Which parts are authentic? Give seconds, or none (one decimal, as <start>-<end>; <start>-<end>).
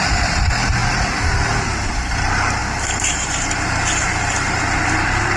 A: none